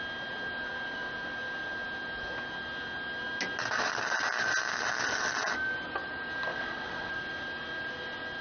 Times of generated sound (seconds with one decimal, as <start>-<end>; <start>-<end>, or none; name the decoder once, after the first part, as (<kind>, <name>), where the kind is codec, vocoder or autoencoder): 6.5-7.1 (vocoder, WaveNeXt)